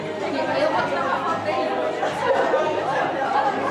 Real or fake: real